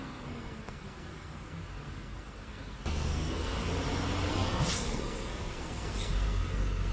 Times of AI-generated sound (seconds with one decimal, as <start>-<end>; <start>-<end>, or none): 0.0-3.6; 4.3-6.9